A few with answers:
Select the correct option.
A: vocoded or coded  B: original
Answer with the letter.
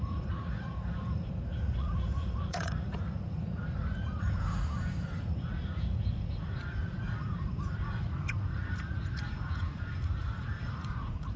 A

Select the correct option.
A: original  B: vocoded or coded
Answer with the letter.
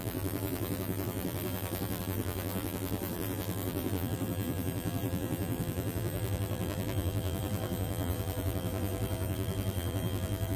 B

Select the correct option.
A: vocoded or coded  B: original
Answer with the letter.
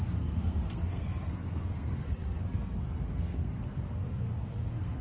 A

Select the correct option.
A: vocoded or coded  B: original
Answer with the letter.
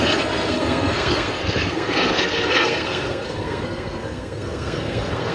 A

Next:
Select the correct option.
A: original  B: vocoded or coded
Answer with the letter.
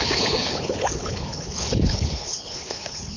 B